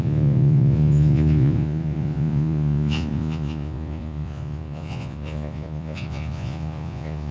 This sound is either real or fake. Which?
fake